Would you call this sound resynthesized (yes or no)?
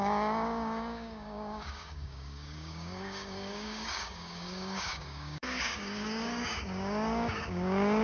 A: yes